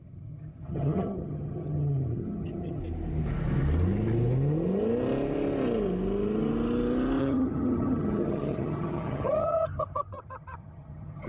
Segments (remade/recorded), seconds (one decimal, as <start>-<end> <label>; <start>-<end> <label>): 0.0-2.8 remade; 2.8-7.2 recorded; 7.2-11.3 remade